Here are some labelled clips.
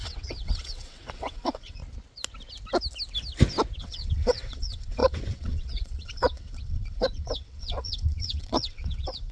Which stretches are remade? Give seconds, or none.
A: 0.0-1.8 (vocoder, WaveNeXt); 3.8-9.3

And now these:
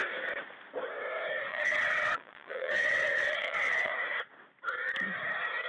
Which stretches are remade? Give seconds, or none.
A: 1.5-3.9 (vocoder, WaveNeXt)

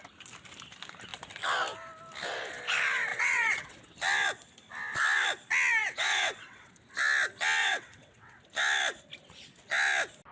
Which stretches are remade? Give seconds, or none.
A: 3.1-3.8 (vocoder, WaveNeXt); 5.8-6.7; 7.6-8.4

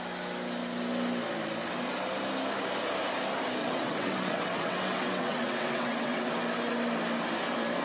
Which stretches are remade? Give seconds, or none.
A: 3.6-6.3 (vocoder, WaveNeXt)

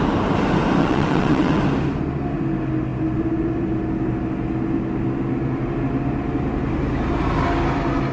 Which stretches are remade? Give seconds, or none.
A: 0.8-1.6 (vocoder, WaveNeXt)

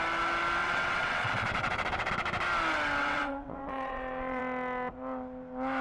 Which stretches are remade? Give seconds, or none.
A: 0.6-2.1 (vocoder, WaveNeXt); 3.0-4.4

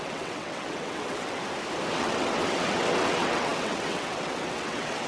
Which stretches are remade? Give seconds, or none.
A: 0.0-1.4 (vocoder, WaveNeXt); 1.9-5.1

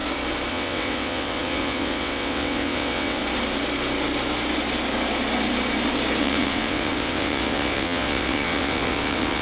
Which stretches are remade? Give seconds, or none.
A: 0.5-3.2 (vocoder, WaveNeXt); 6.2-9.4